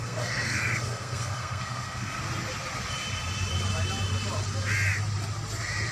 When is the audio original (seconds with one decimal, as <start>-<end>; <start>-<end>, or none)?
2.2-5.9